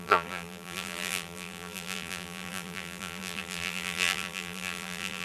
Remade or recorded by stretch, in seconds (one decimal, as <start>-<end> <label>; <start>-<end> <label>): 0.0-5.2 remade